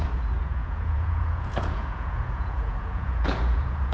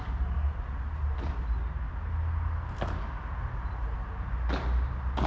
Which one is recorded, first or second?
second